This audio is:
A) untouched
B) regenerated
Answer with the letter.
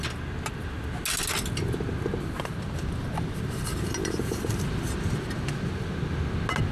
A